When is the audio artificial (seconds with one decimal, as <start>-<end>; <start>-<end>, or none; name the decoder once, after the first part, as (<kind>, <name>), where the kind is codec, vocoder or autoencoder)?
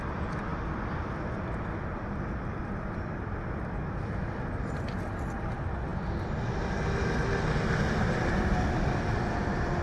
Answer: 0.5-3.6 (vocoder, BigVGAN v2)